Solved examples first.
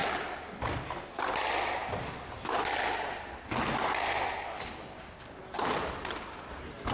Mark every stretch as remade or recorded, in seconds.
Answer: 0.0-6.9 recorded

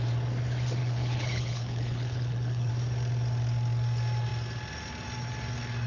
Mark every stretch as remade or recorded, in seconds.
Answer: 0.0-0.8 recorded; 0.8-2.7 remade; 2.7-5.9 recorded